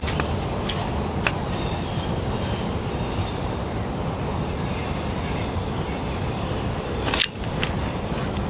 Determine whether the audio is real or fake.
real